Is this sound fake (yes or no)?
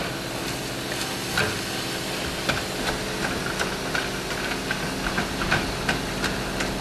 no